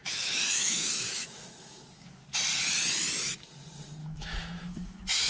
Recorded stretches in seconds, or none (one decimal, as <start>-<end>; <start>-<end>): 2.2-4.0